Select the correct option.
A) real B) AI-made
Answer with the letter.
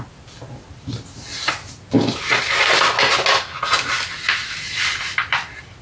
A